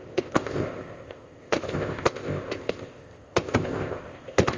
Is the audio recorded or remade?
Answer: remade